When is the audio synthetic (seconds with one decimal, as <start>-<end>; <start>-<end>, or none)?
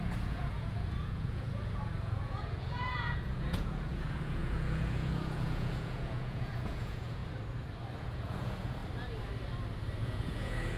0.0-7.2; 8.0-8.8; 10.0-10.8